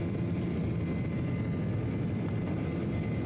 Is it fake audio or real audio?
real